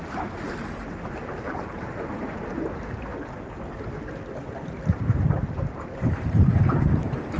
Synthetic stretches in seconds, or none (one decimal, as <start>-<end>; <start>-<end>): 0.0-3.1; 5.0-7.4